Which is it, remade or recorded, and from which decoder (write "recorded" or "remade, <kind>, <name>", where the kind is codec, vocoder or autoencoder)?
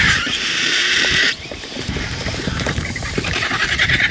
remade, vocoder, BigVGAN v2